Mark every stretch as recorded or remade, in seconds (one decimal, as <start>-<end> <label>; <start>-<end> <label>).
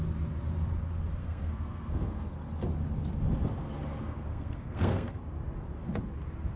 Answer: 0.0-1.2 recorded; 1.2-2.3 remade; 2.3-4.0 recorded; 4.0-5.2 remade; 5.2-6.6 recorded